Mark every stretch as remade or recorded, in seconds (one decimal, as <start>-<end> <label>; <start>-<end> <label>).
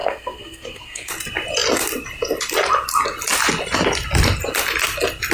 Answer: 0.0-1.1 remade; 1.1-5.3 recorded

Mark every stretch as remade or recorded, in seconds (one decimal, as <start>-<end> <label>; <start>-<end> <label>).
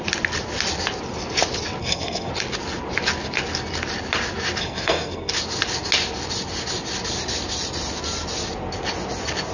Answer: 0.0-1.8 recorded; 1.8-2.3 remade; 2.3-4.6 recorded; 4.6-5.3 remade; 5.3-9.5 recorded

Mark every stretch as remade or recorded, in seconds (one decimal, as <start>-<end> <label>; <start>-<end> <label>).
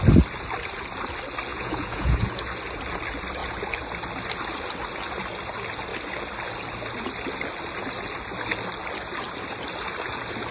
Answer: 0.0-1.5 recorded; 1.5-2.4 remade; 2.4-10.5 recorded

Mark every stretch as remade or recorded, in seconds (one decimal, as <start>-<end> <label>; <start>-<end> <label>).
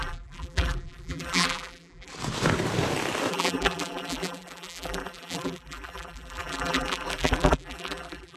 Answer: 0.0-2.1 remade; 2.1-3.3 recorded; 3.3-8.4 remade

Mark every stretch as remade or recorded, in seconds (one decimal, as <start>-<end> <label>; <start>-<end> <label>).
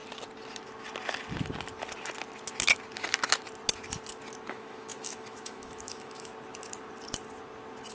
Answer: 0.0-4.5 recorded; 4.5-6.3 remade; 6.3-7.9 recorded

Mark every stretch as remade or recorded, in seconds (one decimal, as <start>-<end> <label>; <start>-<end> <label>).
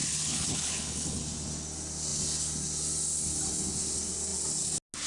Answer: 0.0-1.2 remade; 1.2-5.1 recorded